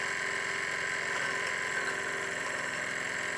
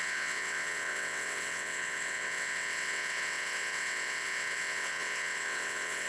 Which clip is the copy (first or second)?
second